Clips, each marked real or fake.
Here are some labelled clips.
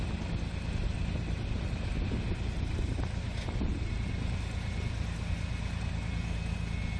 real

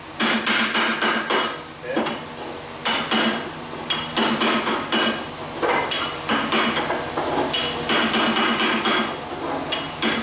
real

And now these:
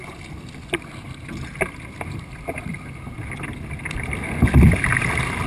real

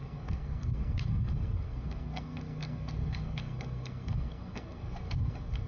fake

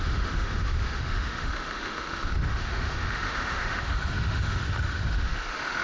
fake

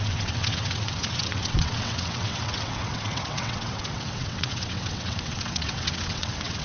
fake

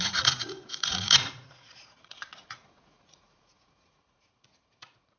fake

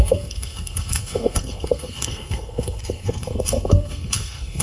fake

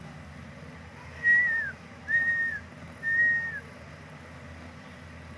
real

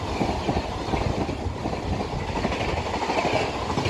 real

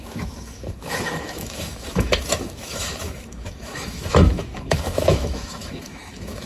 fake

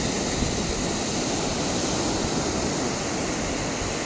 real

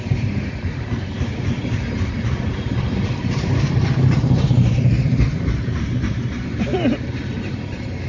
fake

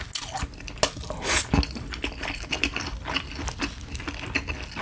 real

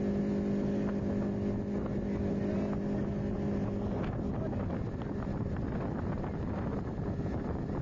real